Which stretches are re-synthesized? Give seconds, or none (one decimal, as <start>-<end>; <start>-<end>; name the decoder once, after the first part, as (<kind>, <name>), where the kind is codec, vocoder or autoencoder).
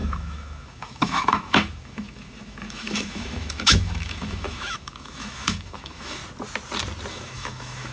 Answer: 0.0-6.2 (autoencoder, DAC-VAE); 7.1-7.9